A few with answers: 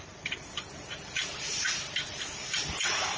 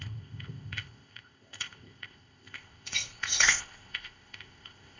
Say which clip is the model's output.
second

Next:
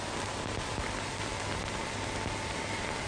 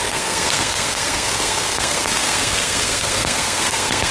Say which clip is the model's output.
second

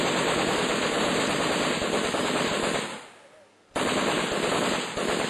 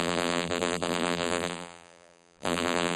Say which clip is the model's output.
second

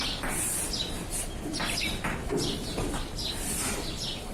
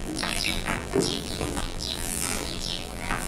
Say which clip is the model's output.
second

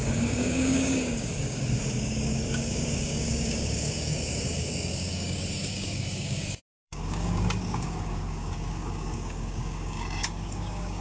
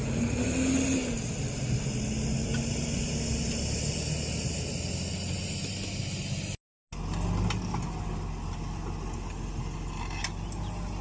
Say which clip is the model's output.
first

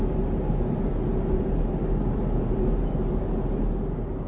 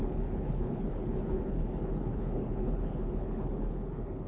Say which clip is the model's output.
second